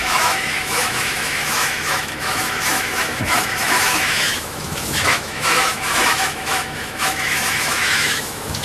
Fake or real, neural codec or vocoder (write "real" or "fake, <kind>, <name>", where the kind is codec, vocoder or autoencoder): fake, autoencoder, DAC-VAE